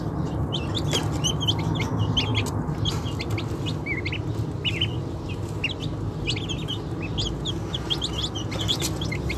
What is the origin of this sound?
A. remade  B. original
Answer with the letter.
B